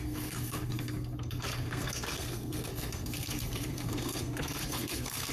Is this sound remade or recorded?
remade